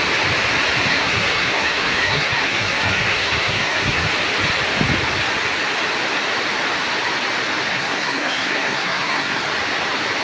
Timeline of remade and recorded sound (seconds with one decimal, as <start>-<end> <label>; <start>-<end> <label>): 0.0-0.9 recorded; 0.9-4.1 remade; 4.1-7.7 recorded; 7.7-9.4 remade; 9.4-10.2 recorded